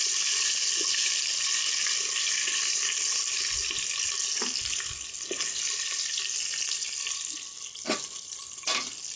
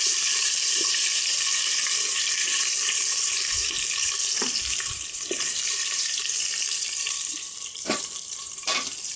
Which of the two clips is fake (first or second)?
second